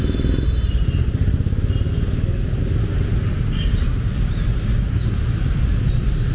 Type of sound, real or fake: real